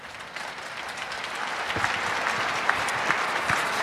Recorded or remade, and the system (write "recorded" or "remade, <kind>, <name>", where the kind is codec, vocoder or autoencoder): recorded